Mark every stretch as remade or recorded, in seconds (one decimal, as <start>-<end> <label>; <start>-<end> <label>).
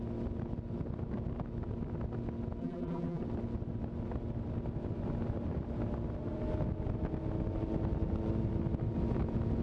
0.0-2.6 recorded; 2.6-3.2 remade; 3.2-9.6 recorded